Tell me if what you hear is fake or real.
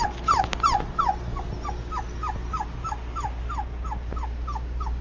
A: real